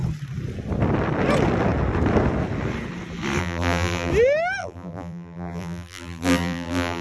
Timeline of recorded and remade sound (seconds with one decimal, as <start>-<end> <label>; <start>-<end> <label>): 0.0-3.4 recorded; 3.4-4.1 remade; 4.1-4.6 recorded; 4.6-7.0 remade